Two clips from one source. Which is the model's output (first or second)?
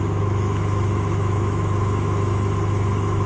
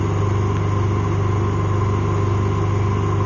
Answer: first